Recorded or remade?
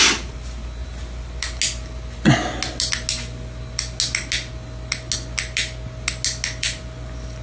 recorded